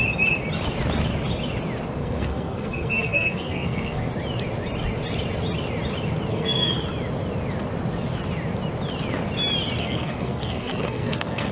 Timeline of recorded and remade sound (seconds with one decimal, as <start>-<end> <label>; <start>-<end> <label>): 0.0-2.0 recorded; 2.0-4.1 remade; 4.1-6.3 recorded; 6.3-6.8 remade; 6.8-9.8 recorded; 9.8-11.5 remade